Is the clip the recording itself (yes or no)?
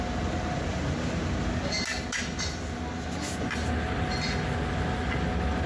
yes